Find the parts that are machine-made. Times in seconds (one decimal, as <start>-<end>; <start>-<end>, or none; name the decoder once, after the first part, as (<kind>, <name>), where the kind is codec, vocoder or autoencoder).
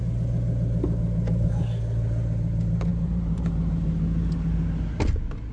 2.9-3.5 (vocoder, BigVGAN v2)